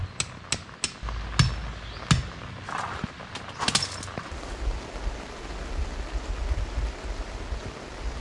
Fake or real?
real